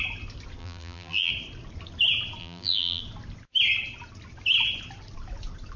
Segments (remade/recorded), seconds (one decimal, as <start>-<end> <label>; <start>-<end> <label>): 0.0-0.6 recorded; 0.6-1.3 remade; 1.3-2.4 recorded; 2.4-3.0 remade; 3.0-5.8 recorded

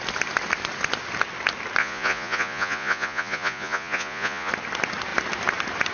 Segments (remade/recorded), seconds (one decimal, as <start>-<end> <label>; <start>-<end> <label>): 0.0-1.8 recorded; 1.8-4.5 remade; 4.5-5.9 recorded